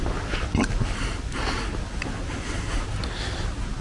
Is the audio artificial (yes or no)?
no